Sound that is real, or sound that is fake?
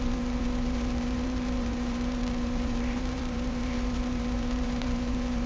fake